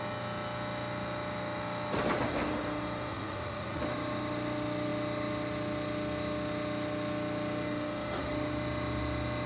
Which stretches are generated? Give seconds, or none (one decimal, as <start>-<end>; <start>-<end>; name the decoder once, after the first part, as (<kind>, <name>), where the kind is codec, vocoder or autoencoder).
3.1-3.8 (vocoder, Vocos)